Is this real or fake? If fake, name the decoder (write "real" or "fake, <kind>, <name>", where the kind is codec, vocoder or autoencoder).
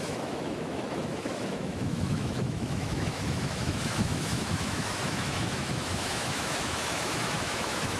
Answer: fake, autoencoder, DAC-VAE